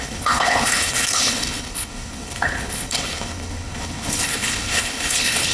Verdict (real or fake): fake